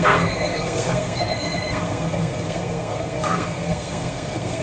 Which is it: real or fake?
fake